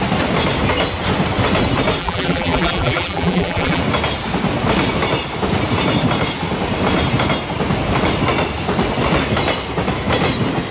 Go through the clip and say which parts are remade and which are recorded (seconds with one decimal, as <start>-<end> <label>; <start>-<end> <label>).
0.0-2.0 recorded; 2.0-3.8 remade; 3.8-10.7 recorded